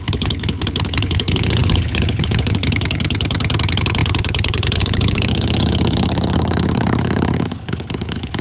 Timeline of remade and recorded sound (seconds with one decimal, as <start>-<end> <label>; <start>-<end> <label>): 0.0-8.4 remade